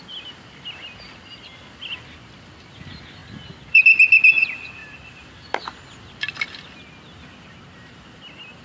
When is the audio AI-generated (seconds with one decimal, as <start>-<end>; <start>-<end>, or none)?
3.2-3.8; 4.8-5.7

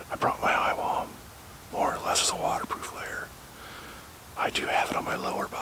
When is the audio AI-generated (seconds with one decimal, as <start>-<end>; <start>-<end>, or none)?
none

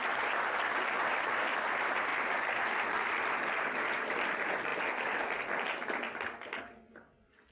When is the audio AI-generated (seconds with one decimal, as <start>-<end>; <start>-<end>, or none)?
0.0-2.1; 2.6-4.7; 6.6-7.5

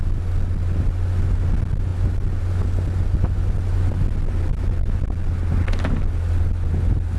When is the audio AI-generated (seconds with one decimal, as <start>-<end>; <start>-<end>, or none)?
none

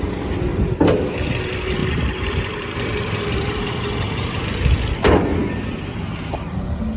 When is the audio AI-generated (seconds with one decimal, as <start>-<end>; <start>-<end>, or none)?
1.8-4.4